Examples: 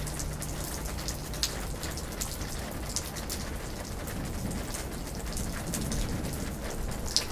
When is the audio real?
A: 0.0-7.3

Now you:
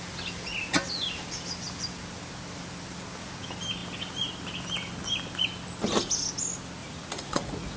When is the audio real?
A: 0.0-6.8

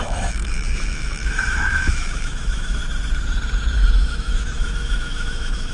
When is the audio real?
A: 2.8-4.0

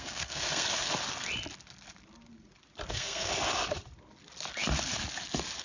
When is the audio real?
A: 0.8-2.9; 3.3-5.6

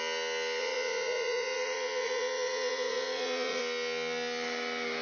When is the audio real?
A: 0.0-0.6; 3.6-5.0